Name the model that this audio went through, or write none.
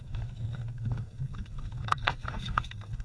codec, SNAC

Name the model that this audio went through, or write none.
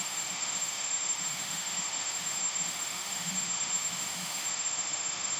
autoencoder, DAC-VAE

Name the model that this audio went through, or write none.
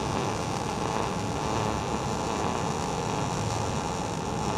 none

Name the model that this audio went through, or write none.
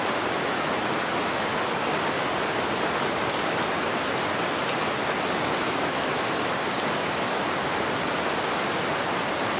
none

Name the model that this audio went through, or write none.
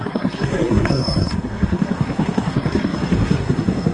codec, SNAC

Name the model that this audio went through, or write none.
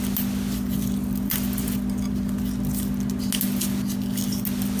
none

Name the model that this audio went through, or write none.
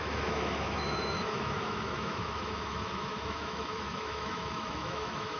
autoencoder, DAC-VAE